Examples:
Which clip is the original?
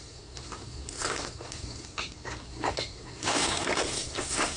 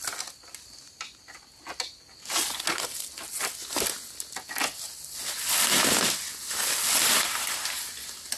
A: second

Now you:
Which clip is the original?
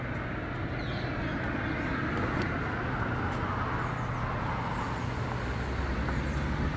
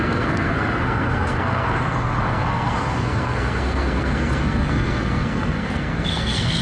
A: first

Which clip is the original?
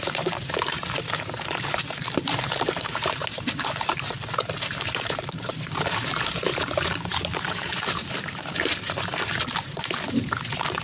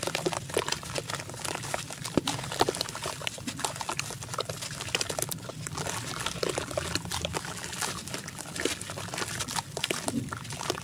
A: second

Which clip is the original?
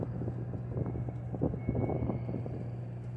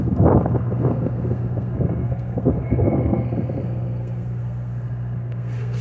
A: first